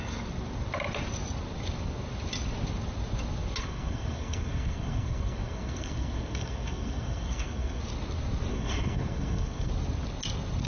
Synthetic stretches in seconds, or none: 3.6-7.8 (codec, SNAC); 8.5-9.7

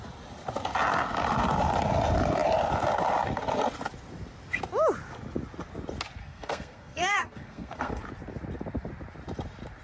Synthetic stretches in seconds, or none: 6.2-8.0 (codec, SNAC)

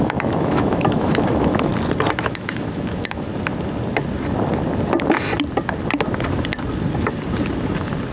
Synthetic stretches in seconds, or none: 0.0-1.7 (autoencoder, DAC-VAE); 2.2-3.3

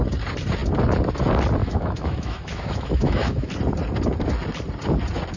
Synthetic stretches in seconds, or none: 1.6-3.5 (autoencoder, DAC-VAE)

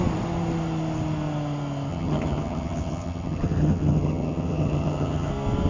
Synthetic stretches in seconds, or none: 1.9-5.3 (vocoder, HiFi-GAN)

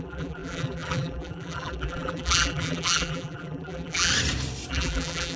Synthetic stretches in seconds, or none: 0.0-4.1 (vocoder, BigVGAN v2); 4.7-5.4

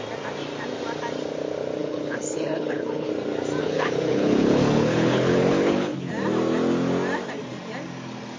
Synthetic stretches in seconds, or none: 1.8-3.1 (codec, HILCodec); 3.6-6.1

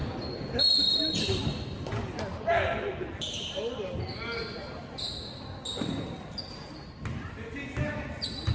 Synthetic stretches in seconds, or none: none